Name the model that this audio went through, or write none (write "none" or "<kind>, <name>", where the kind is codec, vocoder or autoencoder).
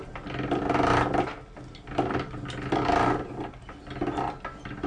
none